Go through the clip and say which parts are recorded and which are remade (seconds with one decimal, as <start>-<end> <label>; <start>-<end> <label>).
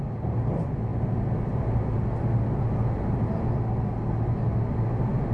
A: 0.0-5.3 recorded